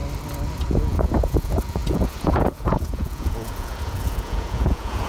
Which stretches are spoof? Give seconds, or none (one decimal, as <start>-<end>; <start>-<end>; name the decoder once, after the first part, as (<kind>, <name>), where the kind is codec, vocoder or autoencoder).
0.6-5.1 (vocoder, Vocos)